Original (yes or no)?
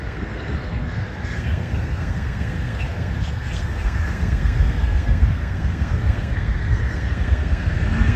no